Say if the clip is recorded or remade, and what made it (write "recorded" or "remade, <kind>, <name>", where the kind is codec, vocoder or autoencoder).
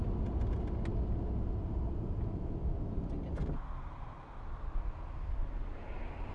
recorded